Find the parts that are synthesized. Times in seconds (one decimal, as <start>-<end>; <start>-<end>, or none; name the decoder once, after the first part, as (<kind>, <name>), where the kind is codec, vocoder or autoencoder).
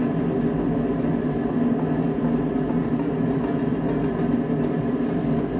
none